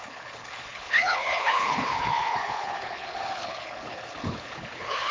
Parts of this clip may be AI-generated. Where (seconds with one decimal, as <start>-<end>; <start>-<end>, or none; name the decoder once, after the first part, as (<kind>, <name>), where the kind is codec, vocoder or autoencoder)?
0.0-5.1 (codec, HILCodec)